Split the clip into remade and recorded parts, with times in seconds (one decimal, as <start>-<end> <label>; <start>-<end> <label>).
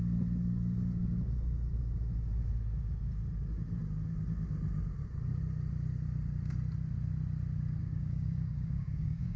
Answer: 0.0-7.8 recorded; 7.8-9.4 remade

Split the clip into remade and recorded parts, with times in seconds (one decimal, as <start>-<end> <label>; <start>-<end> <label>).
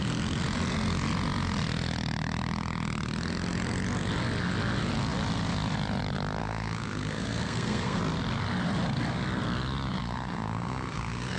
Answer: 0.0-6.4 recorded; 6.4-8.0 remade; 8.0-10.0 recorded; 10.0-11.4 remade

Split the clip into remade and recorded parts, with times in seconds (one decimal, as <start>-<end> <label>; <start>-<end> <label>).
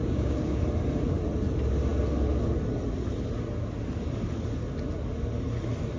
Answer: 0.0-0.6 remade; 0.6-6.0 recorded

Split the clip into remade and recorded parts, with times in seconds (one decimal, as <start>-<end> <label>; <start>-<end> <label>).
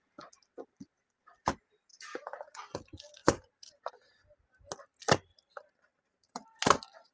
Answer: 0.0-1.9 recorded; 1.9-2.8 remade; 2.8-3.2 recorded; 3.2-3.9 remade; 3.9-5.9 recorded; 5.9-6.6 remade; 6.6-7.1 recorded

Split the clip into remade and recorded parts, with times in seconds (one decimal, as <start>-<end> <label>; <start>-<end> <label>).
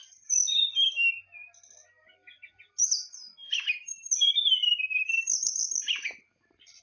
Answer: 0.0-6.8 recorded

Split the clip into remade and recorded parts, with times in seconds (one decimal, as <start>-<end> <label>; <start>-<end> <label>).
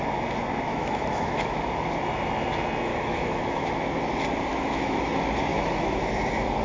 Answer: 0.0-0.7 recorded; 0.7-1.6 remade; 1.6-2.9 recorded; 2.9-3.9 remade; 3.9-4.5 recorded; 4.5-5.1 remade; 5.1-5.5 recorded; 5.5-6.0 remade; 6.0-6.6 recorded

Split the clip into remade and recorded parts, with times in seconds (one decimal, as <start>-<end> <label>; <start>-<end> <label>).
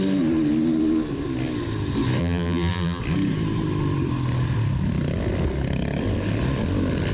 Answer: 0.0-2.2 recorded; 2.2-3.0 remade; 3.0-7.1 recorded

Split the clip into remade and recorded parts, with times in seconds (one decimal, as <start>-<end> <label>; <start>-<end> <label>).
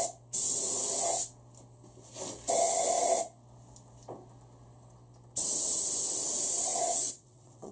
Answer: 0.0-6.7 recorded; 6.7-7.7 remade